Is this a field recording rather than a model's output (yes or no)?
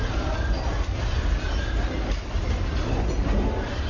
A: yes